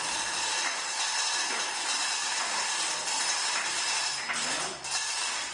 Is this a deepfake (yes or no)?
no